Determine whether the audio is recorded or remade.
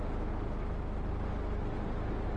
recorded